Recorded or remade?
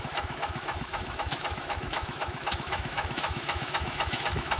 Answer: remade